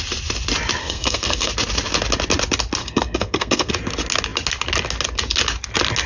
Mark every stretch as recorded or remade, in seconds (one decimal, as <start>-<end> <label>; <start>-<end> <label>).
0.0-0.8 recorded; 0.8-1.5 remade; 1.5-2.8 recorded; 2.8-3.7 remade; 3.7-6.1 recorded